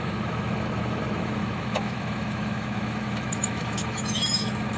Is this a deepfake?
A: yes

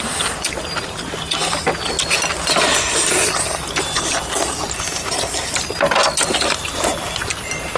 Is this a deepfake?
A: no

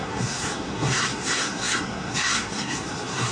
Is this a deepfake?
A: yes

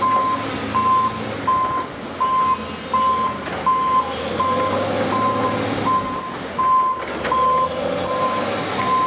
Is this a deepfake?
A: no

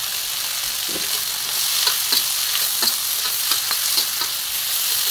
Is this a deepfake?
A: no